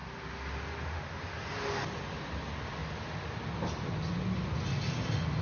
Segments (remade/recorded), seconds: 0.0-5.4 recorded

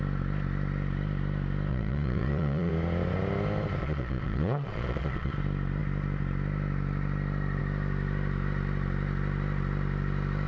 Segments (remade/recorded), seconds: 0.0-1.7 recorded; 1.7-2.7 remade; 2.7-3.8 recorded; 3.8-5.3 remade; 5.3-10.5 recorded

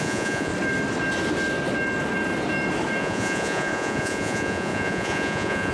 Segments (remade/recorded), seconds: 0.0-0.5 remade; 0.5-3.0 recorded; 3.0-5.7 remade

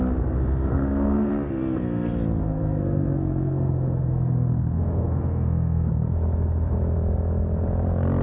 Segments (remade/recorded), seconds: 0.0-0.7 recorded; 0.7-1.3 remade; 1.3-2.4 recorded; 2.4-5.9 remade; 5.9-8.2 recorded